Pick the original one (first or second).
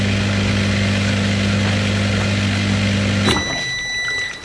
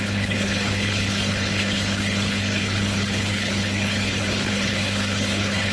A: first